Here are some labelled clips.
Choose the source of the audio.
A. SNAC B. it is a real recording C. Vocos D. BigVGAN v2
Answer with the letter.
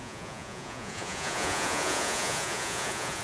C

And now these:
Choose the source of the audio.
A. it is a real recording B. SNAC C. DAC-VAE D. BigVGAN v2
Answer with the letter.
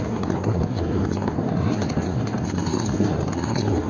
B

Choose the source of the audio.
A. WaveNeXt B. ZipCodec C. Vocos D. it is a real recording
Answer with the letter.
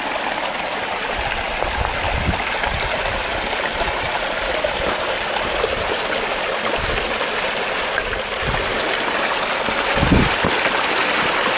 D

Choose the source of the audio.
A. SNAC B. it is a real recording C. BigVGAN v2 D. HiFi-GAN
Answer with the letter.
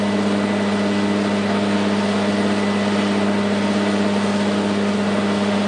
B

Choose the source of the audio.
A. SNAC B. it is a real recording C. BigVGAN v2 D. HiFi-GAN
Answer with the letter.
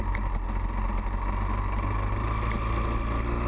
B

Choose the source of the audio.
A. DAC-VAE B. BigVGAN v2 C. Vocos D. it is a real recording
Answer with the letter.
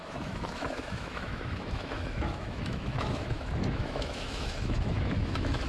A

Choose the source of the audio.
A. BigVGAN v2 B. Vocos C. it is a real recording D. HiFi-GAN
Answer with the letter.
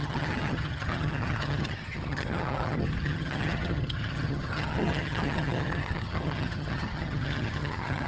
D